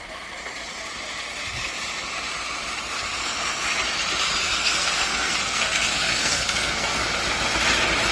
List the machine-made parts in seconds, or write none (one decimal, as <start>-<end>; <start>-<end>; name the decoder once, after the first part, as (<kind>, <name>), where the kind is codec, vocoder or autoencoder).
4.4-7.0 (codec, SNAC)